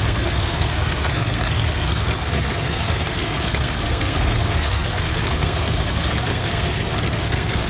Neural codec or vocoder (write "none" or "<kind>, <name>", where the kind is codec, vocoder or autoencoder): codec, SNAC